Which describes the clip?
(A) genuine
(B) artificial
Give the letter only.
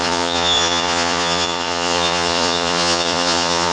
B